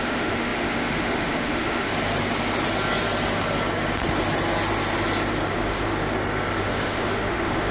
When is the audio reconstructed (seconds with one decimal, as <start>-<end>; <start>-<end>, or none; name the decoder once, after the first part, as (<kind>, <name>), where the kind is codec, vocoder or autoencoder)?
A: 0.0-1.9 (autoencoder, DAC-VAE); 5.5-5.9; 6.6-7.7